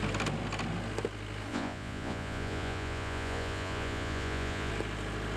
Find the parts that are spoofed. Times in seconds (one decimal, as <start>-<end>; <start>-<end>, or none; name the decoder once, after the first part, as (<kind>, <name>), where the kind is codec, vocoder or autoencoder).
1.5-4.7 (vocoder, Vocos)